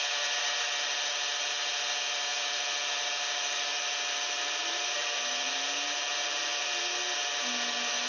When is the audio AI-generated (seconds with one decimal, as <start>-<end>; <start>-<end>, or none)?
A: none